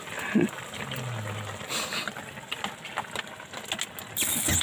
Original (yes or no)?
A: yes